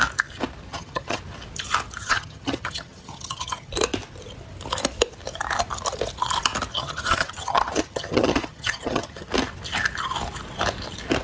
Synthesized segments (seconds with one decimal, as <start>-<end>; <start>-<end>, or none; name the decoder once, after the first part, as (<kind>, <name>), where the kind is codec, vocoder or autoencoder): 0.7-1.2 (vocoder, HiFi-GAN); 2.0-3.7; 6.7-9.3